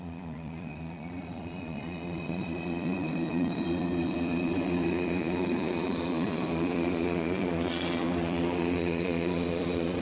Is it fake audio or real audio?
fake